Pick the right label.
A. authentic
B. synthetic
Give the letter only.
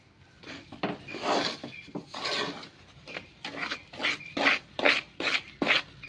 B